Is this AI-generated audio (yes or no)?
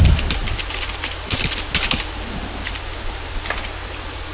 no